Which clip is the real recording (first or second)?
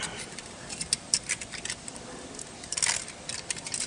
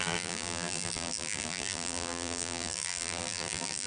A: first